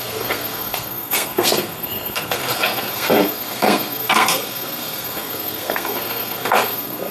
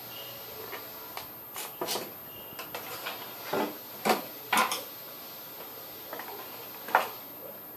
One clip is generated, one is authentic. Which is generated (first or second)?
first